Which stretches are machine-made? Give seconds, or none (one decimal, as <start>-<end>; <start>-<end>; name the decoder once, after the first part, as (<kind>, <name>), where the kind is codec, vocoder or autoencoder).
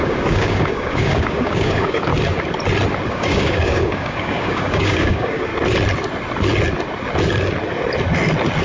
0.0-2.1 (codec, DAC); 3.1-5.5